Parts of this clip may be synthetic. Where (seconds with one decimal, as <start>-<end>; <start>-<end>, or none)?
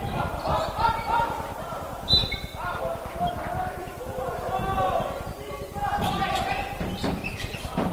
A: 0.0-1.5; 6.0-7.9